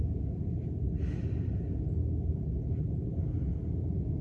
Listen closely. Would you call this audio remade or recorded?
recorded